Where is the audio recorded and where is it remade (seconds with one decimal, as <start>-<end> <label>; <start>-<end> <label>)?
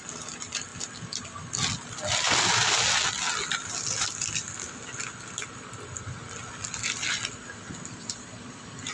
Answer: 0.0-8.9 recorded